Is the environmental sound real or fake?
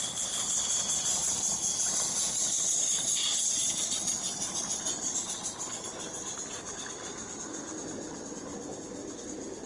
real